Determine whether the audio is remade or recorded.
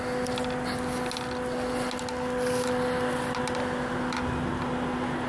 recorded